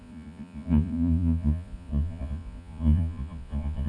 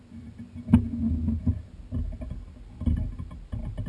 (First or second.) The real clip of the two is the second